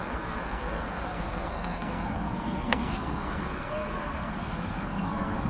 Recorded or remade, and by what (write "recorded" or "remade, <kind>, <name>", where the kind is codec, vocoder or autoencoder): remade, codec, SNAC